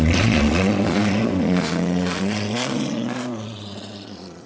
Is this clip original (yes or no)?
no